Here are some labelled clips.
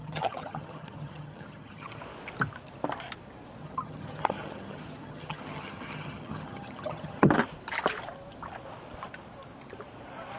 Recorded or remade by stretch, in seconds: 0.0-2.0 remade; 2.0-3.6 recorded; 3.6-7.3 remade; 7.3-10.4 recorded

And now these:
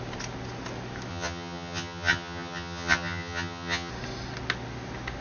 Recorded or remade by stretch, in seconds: 0.0-1.1 recorded; 1.1-3.9 remade; 3.9-5.2 recorded

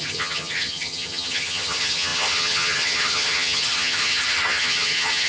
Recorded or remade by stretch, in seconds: 0.0-5.3 remade

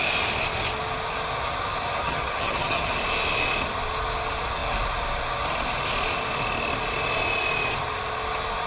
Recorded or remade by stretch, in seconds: 0.0-2.0 recorded; 2.0-2.9 remade; 2.9-8.7 recorded

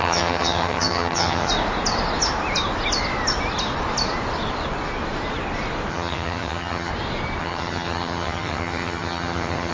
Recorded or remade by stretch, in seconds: 0.0-1.5 remade; 1.5-5.9 recorded; 5.9-6.9 remade; 6.9-7.4 recorded; 7.4-9.7 remade

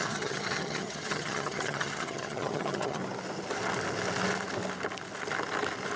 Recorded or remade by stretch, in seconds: 0.0-3.0 remade; 3.0-6.0 recorded

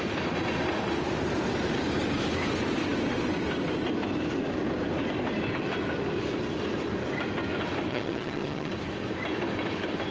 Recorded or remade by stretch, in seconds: 0.0-7.9 recorded; 7.9-8.7 remade; 8.7-10.1 recorded

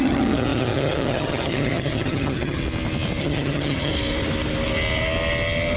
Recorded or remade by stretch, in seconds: 0.0-2.6 remade; 2.6-3.2 recorded; 3.2-3.9 remade; 3.9-5.8 recorded